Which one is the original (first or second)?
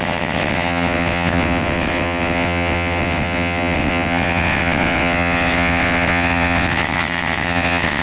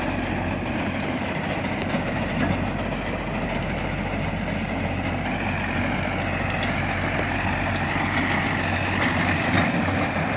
second